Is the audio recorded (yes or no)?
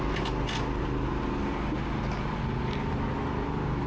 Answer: yes